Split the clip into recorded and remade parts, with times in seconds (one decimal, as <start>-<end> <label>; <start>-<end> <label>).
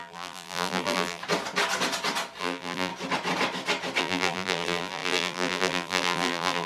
0.0-1.2 remade; 1.2-2.4 recorded; 2.4-2.9 remade; 2.9-4.0 recorded; 4.0-6.7 remade